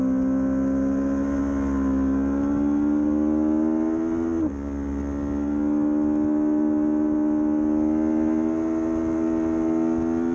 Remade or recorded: recorded